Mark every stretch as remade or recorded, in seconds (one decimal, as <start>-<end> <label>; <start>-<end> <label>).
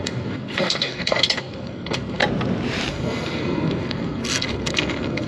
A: 0.0-2.2 remade; 2.2-2.9 recorded; 2.9-5.3 remade